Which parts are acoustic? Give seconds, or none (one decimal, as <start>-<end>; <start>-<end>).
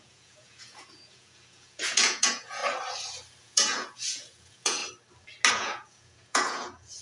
2.6-3.4; 4.8-5.5